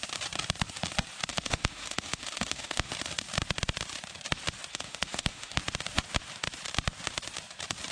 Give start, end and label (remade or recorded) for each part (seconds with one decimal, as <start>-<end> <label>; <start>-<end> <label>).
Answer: 0.0-1.3 recorded; 1.3-2.9 remade; 2.9-4.7 recorded; 4.7-5.6 remade; 5.6-7.9 recorded